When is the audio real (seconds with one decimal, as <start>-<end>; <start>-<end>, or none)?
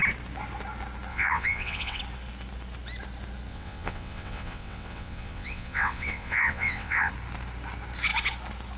0.0-1.1; 2.0-3.5; 7.1-8.8